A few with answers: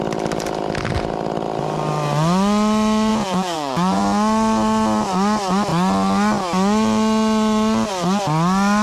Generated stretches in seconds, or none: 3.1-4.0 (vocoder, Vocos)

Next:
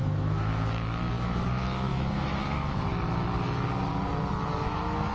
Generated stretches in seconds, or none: 0.0-2.9 (autoencoder, DAC-VAE); 4.3-5.1

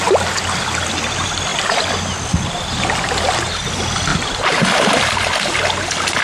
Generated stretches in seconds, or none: none

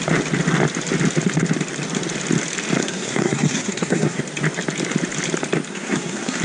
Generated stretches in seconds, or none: 2.8-4.2 (codec, SNAC); 5.7-6.4

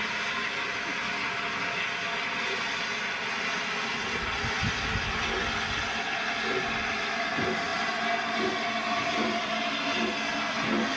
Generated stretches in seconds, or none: none

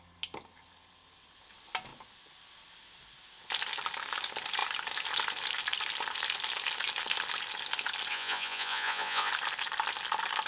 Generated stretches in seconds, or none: 8.1-9.3 (vocoder, Vocos)